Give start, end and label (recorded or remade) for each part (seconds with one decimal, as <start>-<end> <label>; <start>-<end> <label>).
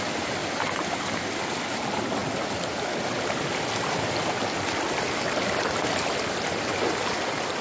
0.0-7.6 recorded